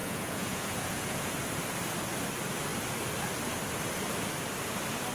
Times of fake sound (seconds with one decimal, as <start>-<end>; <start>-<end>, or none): 0.0-1.3